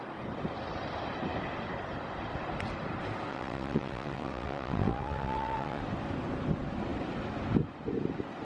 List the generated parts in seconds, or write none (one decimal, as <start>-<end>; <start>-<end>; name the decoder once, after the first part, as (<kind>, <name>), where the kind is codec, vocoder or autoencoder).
3.3-5.8 (vocoder, WaveNeXt)